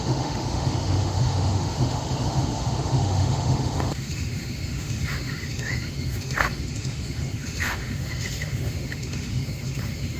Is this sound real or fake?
fake